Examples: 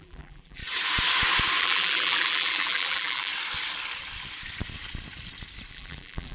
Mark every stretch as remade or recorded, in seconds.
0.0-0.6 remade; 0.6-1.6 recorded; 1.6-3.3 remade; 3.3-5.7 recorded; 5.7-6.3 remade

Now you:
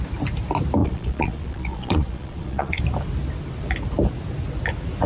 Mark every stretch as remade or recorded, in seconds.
0.0-0.8 recorded; 0.8-2.8 remade; 2.8-5.1 recorded